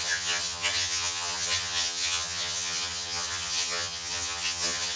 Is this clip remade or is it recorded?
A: remade